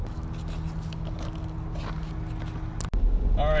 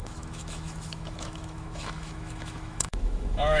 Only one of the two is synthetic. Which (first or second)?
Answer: second